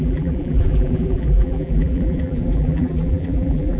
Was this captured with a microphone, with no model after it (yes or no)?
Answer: no